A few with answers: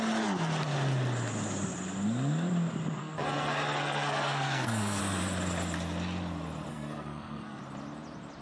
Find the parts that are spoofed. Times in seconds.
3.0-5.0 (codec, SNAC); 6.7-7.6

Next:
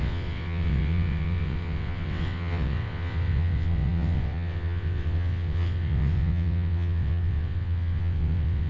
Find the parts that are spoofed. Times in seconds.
0.0-8.7 (vocoder, WaveNeXt)

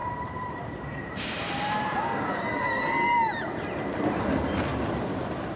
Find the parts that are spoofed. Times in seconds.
0.0-2.6 (vocoder, BigVGAN v2); 4.7-5.6

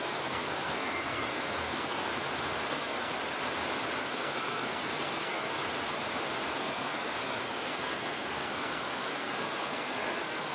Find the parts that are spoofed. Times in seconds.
0.0-2.1 (codec, SNAC); 2.7-3.1; 4.0-5.6; 6.6-10.5

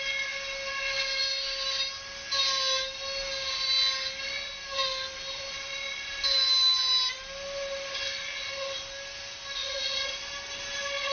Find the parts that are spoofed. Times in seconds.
9.6-10.2 (vocoder, Vocos)

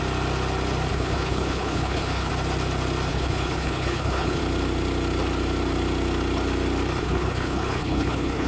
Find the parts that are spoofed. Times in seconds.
0.9-2.3 (codec, HILCodec); 3.1-4.4; 7.0-8.5

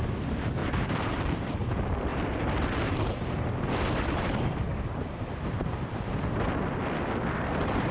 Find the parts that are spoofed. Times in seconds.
0.6-1.7 (vocoder, BigVGAN v2); 2.1-6.2